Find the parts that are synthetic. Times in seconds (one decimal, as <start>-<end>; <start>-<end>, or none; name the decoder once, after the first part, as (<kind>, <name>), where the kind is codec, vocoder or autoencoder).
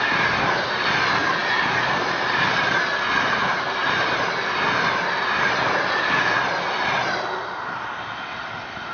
none